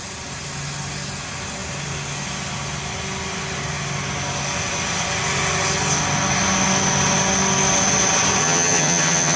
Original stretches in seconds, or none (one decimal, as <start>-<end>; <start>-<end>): 0.0-8.4